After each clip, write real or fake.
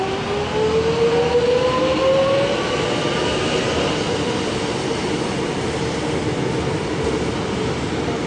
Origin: real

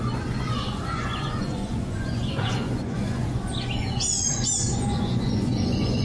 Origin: fake